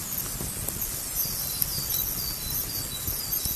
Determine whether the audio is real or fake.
real